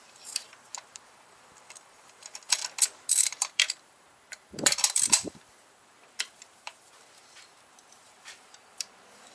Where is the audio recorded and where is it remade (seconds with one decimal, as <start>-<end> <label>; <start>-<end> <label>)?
0.0-2.6 remade; 2.6-3.1 recorded; 3.1-9.3 remade